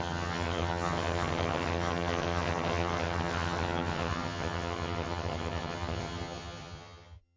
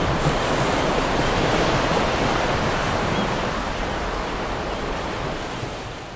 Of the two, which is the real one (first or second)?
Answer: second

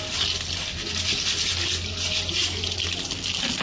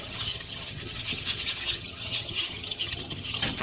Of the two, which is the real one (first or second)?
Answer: first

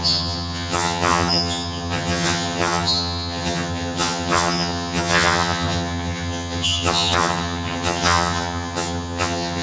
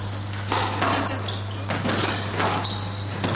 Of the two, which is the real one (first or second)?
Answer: second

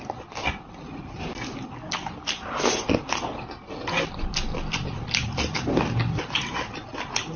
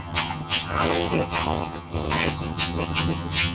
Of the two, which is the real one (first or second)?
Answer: first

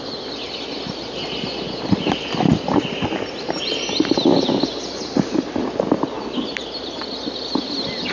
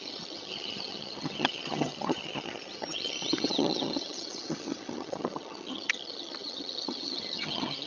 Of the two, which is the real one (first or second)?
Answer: first